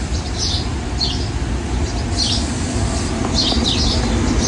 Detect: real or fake real